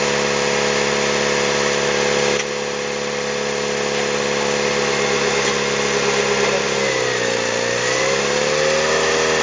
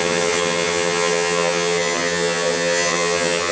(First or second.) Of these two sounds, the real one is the first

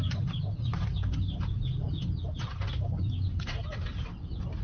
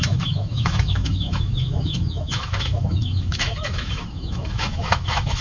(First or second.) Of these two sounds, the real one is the first